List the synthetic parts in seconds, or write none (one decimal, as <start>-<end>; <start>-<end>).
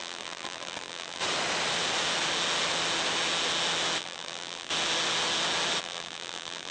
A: 0.0-1.2; 4.0-4.7; 5.8-6.7